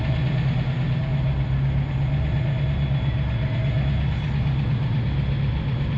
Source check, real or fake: real